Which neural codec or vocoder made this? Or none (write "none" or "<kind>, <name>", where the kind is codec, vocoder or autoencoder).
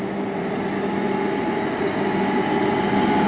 none